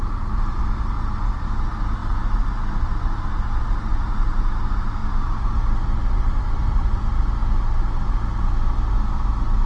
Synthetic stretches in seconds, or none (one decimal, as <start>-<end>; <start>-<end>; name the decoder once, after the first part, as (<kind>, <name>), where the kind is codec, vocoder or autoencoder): 5.0-7.0 (vocoder, BigVGAN v2)